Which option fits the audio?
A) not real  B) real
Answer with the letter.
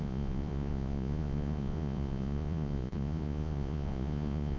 A